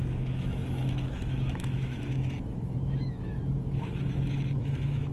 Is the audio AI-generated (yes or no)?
yes